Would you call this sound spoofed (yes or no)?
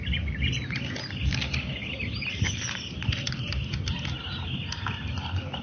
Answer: no